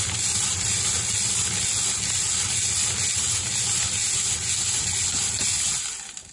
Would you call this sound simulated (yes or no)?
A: no